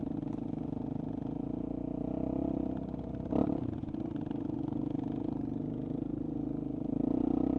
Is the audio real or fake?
real